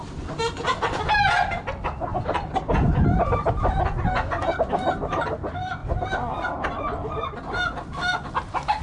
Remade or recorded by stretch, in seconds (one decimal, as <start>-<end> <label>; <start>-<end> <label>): 0.0-5.8 recorded; 5.8-6.4 remade; 6.4-8.8 recorded

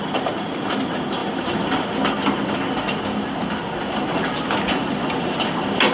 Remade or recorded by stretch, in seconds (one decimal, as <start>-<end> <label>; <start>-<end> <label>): 0.0-5.9 recorded

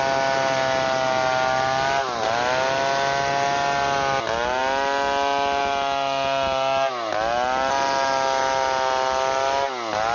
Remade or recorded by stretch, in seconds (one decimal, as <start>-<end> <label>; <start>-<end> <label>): 0.0-10.1 recorded

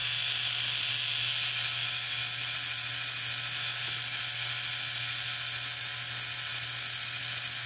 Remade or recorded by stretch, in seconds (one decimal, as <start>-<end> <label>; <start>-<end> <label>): 0.0-7.7 recorded

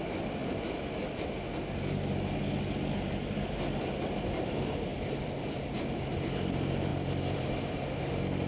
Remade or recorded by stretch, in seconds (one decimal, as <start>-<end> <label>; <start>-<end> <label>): 0.0-4.9 recorded; 4.9-5.8 remade; 5.8-6.9 recorded; 6.9-7.5 remade; 7.5-8.5 recorded

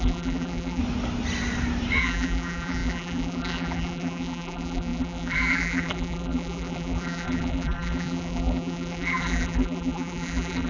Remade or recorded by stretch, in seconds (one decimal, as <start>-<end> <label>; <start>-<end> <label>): 0.0-0.8 remade; 0.8-2.0 recorded; 2.0-10.7 remade

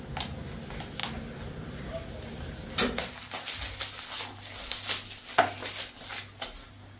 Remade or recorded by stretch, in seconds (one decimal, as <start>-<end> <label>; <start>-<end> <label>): 0.0-7.0 recorded

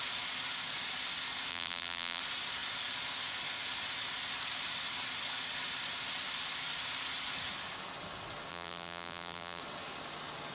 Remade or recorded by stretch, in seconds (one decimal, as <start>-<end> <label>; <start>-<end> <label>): 0.0-1.5 recorded; 1.5-2.2 remade; 2.2-8.5 recorded; 8.5-9.6 remade; 9.6-10.5 recorded